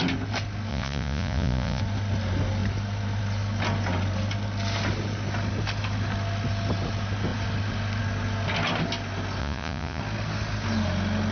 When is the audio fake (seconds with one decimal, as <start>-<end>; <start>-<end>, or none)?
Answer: 0.7-1.8; 9.4-10.0